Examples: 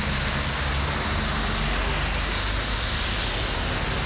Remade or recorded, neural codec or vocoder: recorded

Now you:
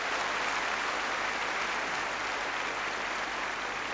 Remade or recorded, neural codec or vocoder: recorded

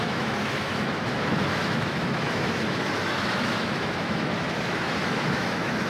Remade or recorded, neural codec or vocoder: remade, autoencoder, DAC-VAE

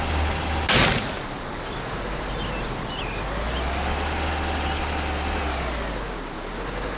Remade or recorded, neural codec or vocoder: recorded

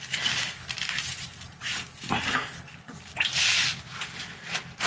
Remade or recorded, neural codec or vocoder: recorded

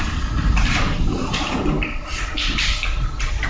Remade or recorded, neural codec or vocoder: remade, vocoder, BigVGAN v2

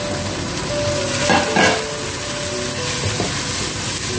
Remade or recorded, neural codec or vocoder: recorded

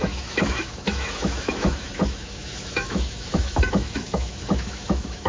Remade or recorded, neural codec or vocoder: remade, autoencoder, DAC-VAE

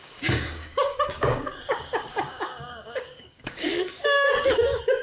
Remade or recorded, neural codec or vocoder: remade, codec, DAC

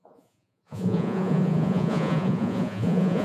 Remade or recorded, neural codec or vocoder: remade, vocoder, Vocos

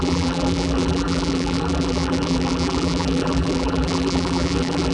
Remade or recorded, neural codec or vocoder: remade, vocoder, BigVGAN v2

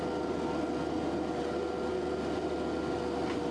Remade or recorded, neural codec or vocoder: recorded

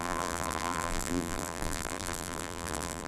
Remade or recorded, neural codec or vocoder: remade, vocoder, BigVGAN v2